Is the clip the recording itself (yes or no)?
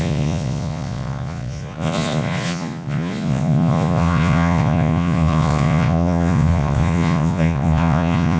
no